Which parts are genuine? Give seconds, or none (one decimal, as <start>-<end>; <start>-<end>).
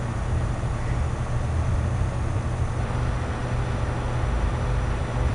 0.0-5.3